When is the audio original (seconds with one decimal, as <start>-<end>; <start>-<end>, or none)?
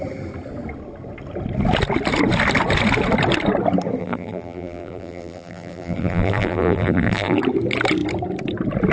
0.0-4.0; 7.4-8.9